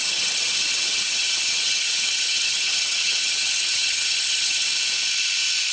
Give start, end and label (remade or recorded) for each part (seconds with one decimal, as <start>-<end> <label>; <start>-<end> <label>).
0.0-4.7 remade; 4.7-5.7 recorded